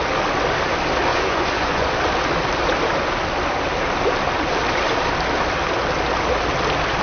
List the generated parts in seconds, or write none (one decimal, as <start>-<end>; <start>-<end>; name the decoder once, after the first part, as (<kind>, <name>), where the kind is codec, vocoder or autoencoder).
1.1-1.9 (vocoder, Vocos)